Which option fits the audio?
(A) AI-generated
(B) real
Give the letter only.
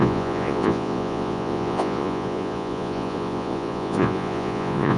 A